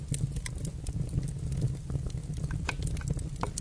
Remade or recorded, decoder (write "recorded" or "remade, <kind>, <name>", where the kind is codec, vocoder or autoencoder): recorded